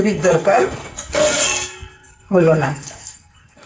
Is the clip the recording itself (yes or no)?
no